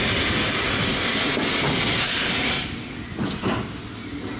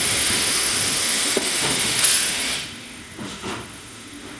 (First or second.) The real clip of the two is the first